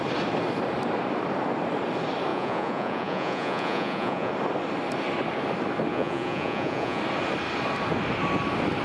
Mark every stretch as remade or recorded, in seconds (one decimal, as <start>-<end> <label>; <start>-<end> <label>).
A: 0.0-2.3 recorded; 2.3-4.3 remade; 4.3-5.9 recorded; 5.9-7.0 remade; 7.0-8.8 recorded